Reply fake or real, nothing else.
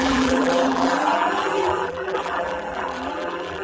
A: fake